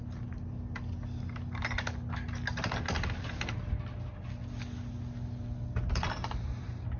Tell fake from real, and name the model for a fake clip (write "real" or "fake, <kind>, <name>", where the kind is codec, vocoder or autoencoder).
real